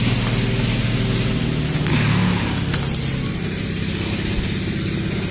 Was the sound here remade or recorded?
recorded